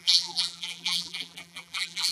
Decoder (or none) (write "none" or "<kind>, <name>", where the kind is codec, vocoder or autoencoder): vocoder, BigVGAN v2